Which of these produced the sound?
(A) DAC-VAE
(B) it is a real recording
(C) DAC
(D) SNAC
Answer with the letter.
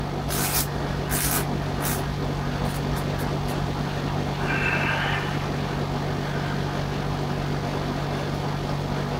B